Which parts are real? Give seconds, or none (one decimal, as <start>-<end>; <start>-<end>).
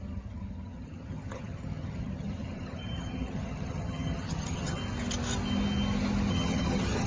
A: 4.8-6.3